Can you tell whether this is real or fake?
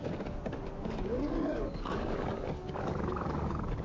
fake